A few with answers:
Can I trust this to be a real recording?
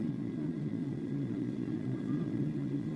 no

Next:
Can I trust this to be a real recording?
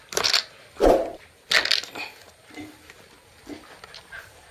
yes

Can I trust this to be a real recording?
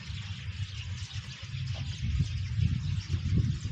yes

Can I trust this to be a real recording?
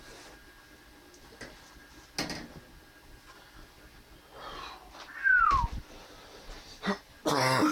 yes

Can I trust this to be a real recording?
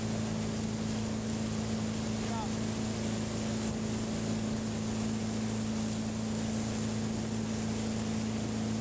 yes